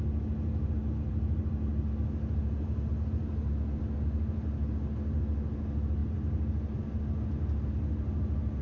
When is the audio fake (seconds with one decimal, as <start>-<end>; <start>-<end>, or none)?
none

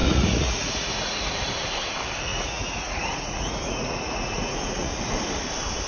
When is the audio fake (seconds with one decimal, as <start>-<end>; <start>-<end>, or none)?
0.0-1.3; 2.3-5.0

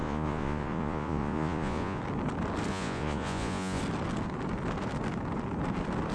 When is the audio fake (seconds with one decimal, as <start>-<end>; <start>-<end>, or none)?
0.0-2.0; 2.7-3.8

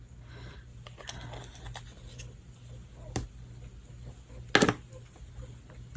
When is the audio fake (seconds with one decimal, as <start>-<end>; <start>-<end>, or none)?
none

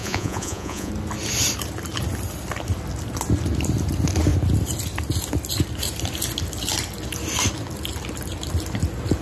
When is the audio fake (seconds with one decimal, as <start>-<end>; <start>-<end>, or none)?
0.0-0.9